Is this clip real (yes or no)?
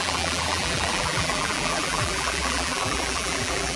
no